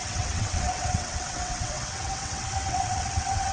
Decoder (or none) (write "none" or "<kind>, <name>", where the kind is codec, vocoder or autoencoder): vocoder, WaveNeXt